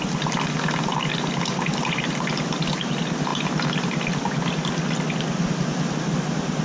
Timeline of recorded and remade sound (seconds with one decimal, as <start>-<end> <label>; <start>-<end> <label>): 0.0-6.6 recorded